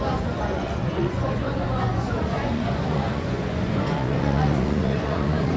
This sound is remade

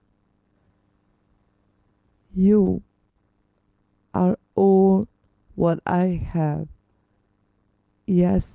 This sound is recorded